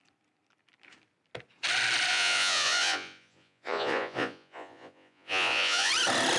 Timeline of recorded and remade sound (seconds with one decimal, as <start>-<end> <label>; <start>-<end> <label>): 0.0-2.1 recorded; 2.1-5.9 remade; 5.9-6.4 recorded